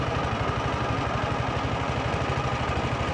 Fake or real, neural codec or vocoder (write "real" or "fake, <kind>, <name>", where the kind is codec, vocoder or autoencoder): real